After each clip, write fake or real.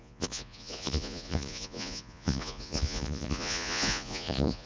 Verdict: fake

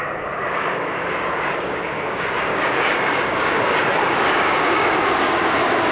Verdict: fake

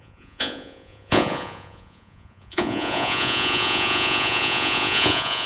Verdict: fake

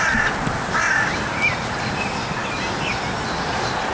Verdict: real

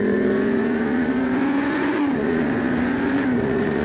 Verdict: fake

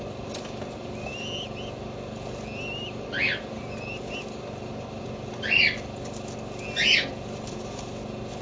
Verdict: real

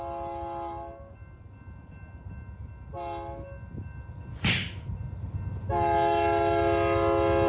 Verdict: real